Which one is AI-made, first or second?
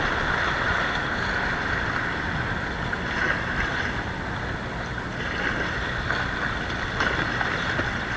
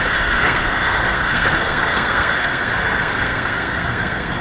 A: second